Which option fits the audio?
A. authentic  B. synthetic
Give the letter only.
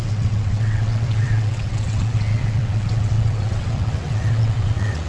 B